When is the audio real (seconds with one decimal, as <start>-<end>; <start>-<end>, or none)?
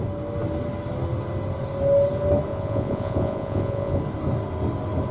0.0-2.5; 4.0-5.1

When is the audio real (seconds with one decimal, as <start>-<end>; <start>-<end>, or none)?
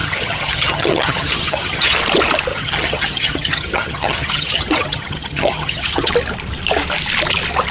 2.0-2.5; 6.1-7.7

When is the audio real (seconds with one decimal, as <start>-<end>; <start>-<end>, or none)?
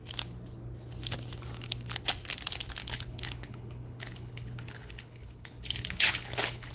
0.0-2.8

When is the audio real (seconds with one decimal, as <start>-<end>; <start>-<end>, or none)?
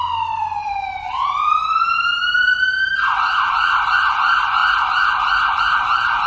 0.0-0.6; 2.0-6.3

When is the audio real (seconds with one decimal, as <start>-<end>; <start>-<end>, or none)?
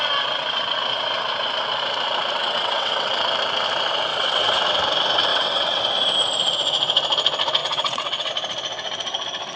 0.0-2.4; 3.1-4.1; 4.6-5.3; 5.8-7.6; 8.3-9.6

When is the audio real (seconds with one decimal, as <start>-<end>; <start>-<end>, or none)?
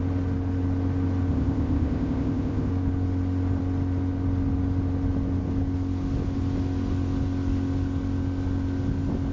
0.0-1.3; 2.7-9.3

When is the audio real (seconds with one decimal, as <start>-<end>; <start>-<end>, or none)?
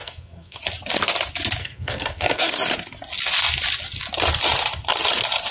0.6-1.6; 2.5-5.5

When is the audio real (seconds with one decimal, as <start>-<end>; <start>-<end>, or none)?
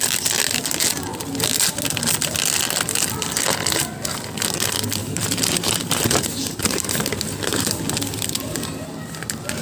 0.0-5.0; 7.8-9.6